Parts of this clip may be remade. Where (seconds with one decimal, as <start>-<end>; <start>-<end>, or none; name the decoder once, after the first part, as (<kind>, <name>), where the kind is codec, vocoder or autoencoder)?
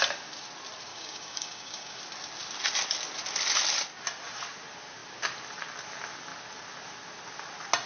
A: 0.9-2.0 (codec, DAC)